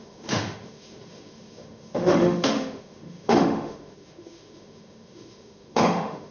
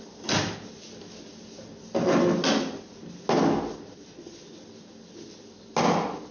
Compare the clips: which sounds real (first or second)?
second